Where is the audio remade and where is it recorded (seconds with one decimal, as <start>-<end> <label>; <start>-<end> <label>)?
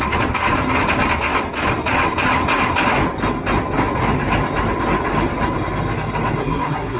0.0-6.4 recorded; 6.4-7.0 remade